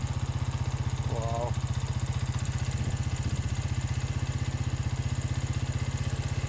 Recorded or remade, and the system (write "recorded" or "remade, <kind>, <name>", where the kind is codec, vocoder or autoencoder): recorded